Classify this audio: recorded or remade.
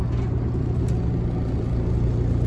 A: recorded